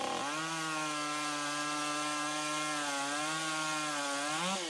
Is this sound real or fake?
real